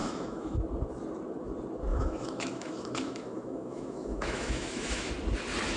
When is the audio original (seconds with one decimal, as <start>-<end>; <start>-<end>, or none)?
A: 0.6-1.9; 5.1-5.8